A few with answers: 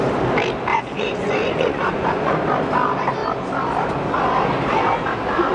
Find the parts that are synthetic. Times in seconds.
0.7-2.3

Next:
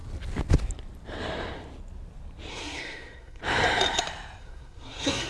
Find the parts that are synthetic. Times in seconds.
2.5-3.4; 4.4-5.3

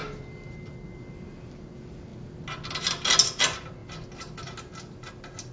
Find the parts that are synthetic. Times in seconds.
none

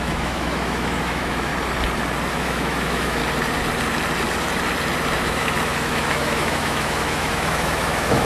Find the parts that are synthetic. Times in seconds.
0.0-1.5; 2.3-3.2; 5.2-8.2

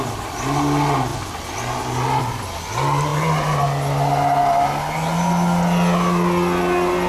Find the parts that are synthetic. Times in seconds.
none

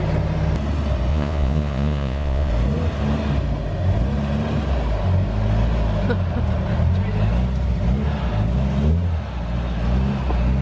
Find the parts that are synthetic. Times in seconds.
1.1-2.5